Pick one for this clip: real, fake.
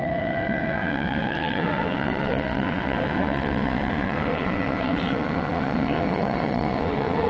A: fake